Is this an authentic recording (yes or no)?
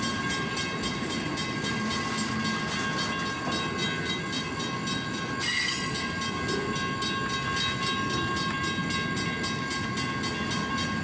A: yes